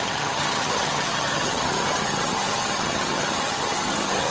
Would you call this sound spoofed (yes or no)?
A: yes